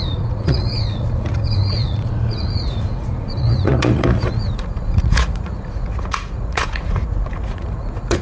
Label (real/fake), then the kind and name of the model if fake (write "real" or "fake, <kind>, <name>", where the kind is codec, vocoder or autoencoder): fake, vocoder, Vocos